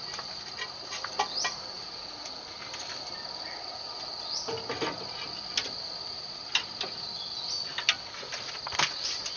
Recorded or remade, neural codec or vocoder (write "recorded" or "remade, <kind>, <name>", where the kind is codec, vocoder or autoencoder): recorded